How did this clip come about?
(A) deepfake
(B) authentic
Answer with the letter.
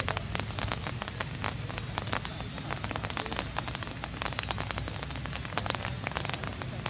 B